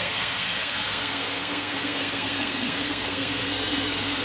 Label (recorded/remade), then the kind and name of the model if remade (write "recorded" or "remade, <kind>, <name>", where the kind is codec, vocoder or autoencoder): remade, codec, SNAC